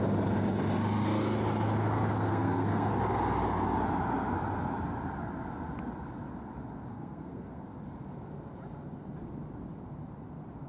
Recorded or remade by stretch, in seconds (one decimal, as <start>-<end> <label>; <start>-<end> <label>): 0.0-2.3 recorded; 2.3-2.9 remade; 2.9-6.9 recorded; 6.9-7.6 remade; 7.6-10.7 recorded